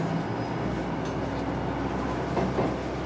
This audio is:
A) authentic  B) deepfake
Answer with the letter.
A